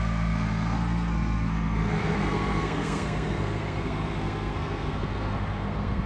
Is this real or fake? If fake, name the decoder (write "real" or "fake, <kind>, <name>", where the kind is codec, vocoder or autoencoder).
fake, codec, SNAC